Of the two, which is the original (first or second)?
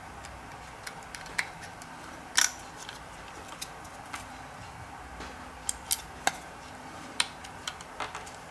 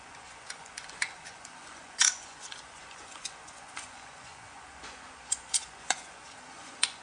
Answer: first